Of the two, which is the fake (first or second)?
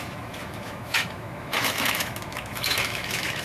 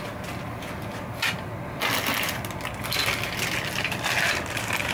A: first